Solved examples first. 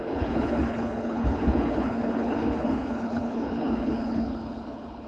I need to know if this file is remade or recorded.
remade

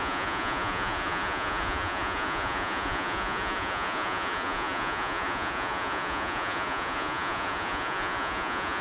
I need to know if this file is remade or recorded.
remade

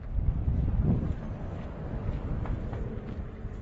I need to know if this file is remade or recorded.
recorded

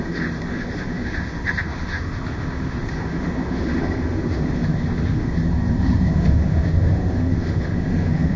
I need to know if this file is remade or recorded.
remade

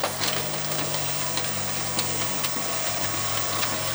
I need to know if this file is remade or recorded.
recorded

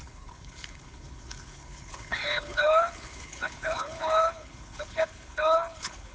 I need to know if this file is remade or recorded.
remade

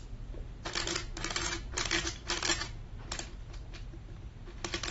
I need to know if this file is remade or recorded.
recorded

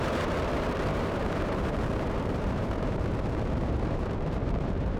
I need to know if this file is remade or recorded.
remade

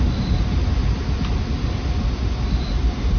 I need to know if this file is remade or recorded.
recorded